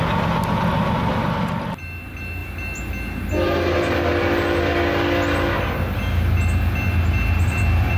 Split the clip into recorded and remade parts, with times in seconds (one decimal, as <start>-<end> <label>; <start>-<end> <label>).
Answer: 0.0-8.0 recorded